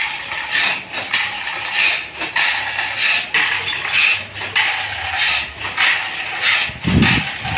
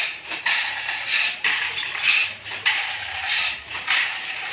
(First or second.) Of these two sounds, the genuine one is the first